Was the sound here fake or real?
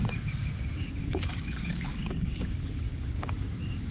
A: fake